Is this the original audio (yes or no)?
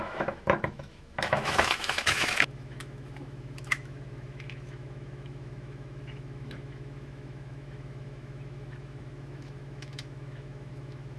no